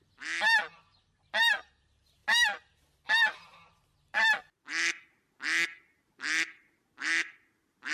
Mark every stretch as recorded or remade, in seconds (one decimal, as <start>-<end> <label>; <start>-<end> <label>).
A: 0.0-7.9 recorded